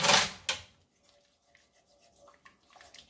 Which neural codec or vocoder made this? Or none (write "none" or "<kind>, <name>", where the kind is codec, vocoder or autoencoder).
none